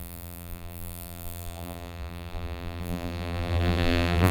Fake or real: fake